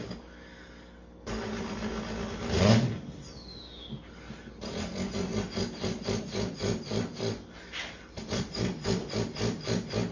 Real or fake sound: real